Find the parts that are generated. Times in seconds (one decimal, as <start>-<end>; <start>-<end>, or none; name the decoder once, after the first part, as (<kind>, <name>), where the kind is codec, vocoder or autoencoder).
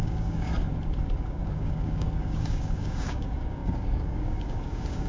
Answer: 0.0-0.5 (codec, DAC); 1.2-5.1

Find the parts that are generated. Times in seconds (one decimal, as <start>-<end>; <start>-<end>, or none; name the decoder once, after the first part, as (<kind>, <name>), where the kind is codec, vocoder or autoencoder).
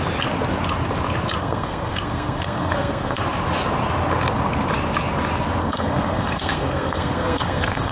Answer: 1.4-3.2 (codec, SNAC); 5.6-7.9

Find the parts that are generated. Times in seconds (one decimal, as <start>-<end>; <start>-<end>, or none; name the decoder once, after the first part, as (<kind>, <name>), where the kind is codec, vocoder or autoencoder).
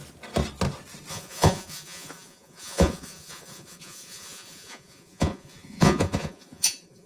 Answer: 1.1-7.1 (vocoder, Vocos)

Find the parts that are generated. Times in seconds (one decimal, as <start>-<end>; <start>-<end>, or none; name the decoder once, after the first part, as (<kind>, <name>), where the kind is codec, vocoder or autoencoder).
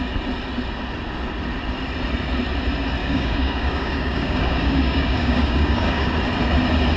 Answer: 3.0-6.1 (codec, DAC)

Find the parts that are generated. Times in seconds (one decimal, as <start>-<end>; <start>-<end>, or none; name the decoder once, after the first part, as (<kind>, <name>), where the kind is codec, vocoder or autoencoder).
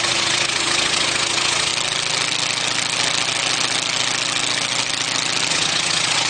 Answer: 0.0-1.7 (vocoder, Vocos); 5.5-6.3